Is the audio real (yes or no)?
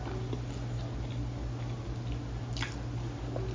yes